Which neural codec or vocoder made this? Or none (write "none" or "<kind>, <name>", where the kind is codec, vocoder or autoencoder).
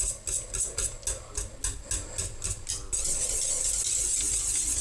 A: none